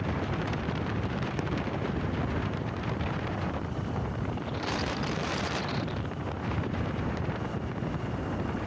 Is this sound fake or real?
fake